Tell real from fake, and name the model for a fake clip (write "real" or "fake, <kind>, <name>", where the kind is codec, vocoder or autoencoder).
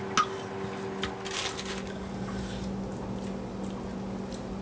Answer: real